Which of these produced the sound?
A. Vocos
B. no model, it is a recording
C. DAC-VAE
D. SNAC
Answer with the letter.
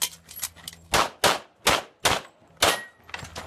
B